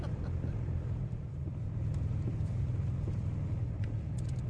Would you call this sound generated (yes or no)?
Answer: yes